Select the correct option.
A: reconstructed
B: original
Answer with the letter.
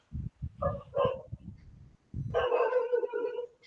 B